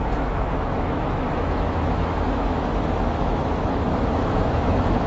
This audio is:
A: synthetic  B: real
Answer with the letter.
A